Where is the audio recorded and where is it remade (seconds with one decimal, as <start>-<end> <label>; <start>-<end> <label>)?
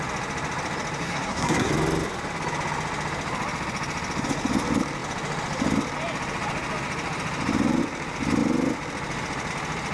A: 0.0-1.0 recorded; 1.0-1.7 remade; 1.7-9.9 recorded